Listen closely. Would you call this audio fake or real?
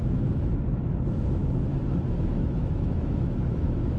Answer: fake